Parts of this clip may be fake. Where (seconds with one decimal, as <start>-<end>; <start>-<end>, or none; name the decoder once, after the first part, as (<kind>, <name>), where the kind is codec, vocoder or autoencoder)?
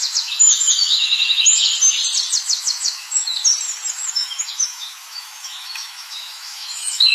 0.0-1.7 (autoencoder, DAC-VAE); 2.4-3.4; 3.9-7.1